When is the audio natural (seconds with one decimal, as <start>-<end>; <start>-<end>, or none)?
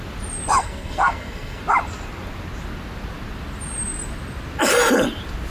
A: 0.0-0.6; 1.6-5.5